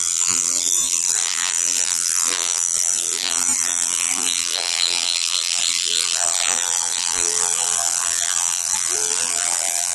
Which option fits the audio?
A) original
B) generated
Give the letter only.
B